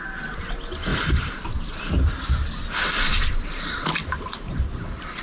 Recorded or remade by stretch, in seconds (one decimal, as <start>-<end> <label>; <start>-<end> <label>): 0.0-5.2 recorded